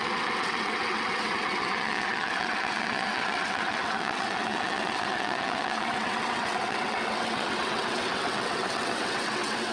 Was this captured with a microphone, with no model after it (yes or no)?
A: no